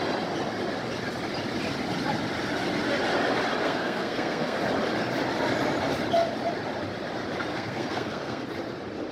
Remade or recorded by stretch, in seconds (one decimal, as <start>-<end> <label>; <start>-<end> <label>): 0.0-3.6 recorded; 3.6-4.6 remade; 4.6-7.5 recorded; 7.5-8.4 remade; 8.4-9.1 recorded